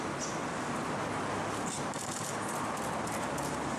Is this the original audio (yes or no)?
yes